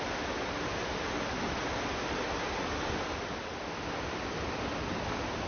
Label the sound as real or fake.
real